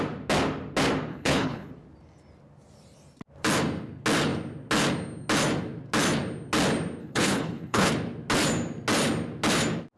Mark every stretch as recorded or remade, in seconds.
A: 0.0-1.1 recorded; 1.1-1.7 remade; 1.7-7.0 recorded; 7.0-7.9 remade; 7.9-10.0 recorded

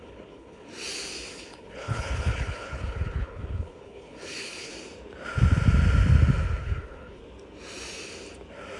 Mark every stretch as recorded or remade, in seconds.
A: 0.0-0.7 remade; 0.7-1.3 recorded; 1.3-4.7 remade; 4.7-6.6 recorded; 6.6-7.2 remade; 7.2-8.8 recorded

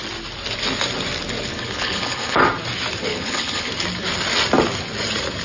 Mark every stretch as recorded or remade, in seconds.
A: 0.0-1.5 recorded; 1.5-2.4 remade; 2.4-3.1 recorded; 3.1-3.7 remade; 3.7-5.4 recorded